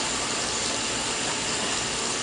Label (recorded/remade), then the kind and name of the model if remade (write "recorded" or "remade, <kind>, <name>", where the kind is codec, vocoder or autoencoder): recorded